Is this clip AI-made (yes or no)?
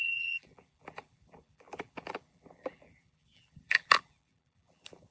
yes